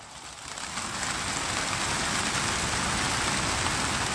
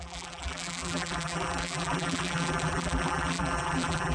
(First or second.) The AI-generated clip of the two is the second